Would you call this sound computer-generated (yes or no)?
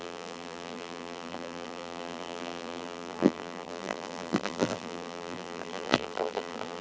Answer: yes